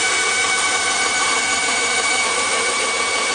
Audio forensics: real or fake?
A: fake